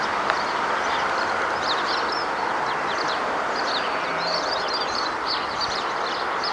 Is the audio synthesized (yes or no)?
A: no